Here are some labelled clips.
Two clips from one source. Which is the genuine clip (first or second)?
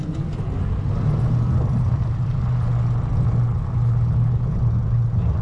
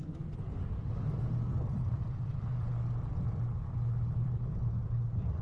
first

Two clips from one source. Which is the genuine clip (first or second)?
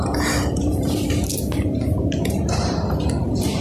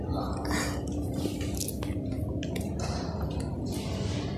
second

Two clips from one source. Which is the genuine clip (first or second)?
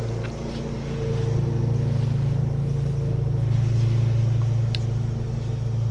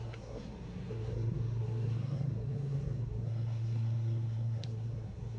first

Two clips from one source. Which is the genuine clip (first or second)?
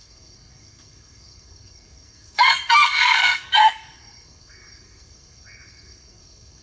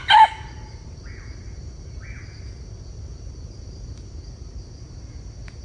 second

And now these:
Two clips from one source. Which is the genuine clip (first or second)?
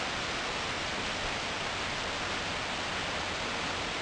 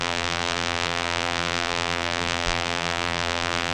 first